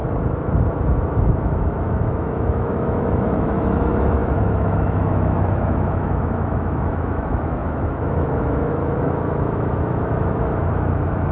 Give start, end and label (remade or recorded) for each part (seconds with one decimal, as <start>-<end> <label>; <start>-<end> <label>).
0.0-1.3 recorded; 1.3-11.3 remade